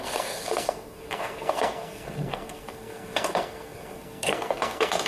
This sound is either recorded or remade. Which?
remade